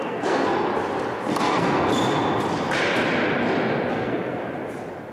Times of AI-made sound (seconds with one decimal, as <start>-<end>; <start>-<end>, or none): 0.0-0.7; 1.3-1.9; 3.9-4.4